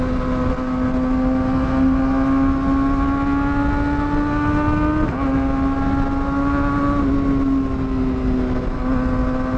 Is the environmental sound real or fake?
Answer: real